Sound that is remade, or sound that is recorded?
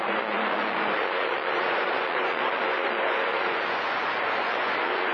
remade